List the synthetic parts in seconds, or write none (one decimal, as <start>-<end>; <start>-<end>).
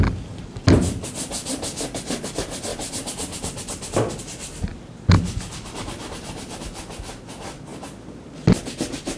none